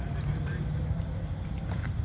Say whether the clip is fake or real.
fake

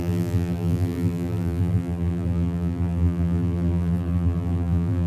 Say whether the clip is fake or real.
fake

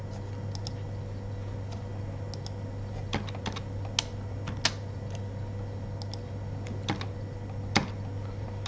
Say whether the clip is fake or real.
real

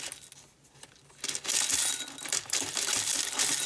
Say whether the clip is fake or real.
real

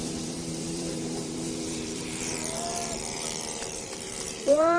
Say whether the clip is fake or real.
fake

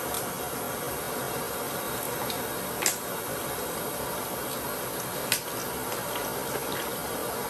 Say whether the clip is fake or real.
real